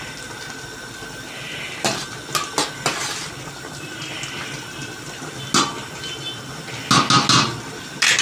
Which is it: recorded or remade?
recorded